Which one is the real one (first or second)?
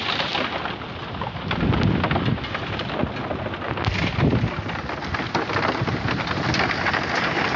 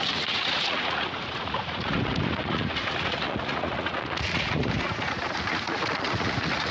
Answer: first